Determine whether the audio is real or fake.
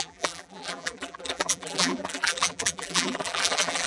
fake